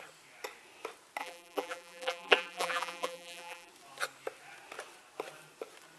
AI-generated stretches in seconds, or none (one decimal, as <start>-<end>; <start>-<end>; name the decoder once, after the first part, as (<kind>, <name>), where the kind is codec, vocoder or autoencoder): 1.2-3.7 (vocoder, BigVGAN v2)